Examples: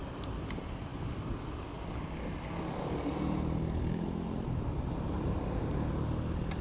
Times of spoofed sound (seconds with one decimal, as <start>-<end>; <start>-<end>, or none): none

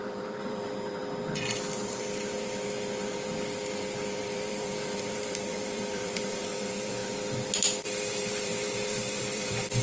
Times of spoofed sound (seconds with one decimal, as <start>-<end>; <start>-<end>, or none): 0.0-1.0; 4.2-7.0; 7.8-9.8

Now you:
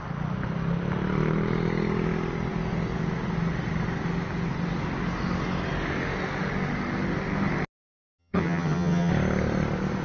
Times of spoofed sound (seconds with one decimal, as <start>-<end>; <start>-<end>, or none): 8.2-9.1